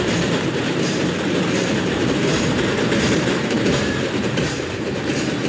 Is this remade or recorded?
remade